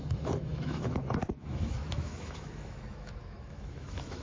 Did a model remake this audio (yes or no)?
yes